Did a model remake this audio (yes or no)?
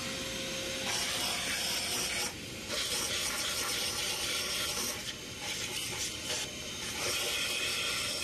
no